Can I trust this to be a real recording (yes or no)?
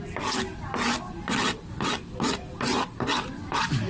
yes